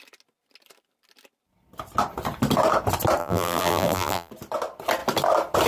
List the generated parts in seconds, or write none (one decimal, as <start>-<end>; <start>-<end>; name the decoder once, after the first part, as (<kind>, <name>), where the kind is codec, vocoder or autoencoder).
3.2-4.3 (vocoder, BigVGAN v2)